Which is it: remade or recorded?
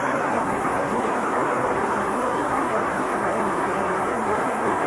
remade